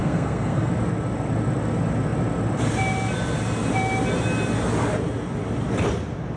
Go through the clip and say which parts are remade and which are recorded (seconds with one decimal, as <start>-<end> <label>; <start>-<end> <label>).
0.0-0.7 remade; 0.7-6.4 recorded